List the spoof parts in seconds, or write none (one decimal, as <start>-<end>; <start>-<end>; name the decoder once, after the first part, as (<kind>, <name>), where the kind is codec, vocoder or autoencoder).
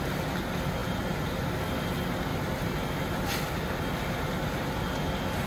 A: 2.3-3.0 (vocoder, BigVGAN v2)